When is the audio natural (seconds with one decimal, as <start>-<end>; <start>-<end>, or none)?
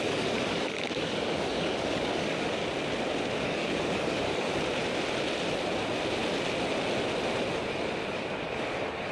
2.6-3.4; 4.5-8.1